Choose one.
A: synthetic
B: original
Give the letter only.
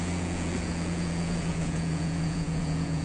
A